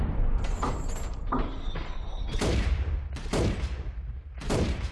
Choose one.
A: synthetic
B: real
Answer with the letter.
A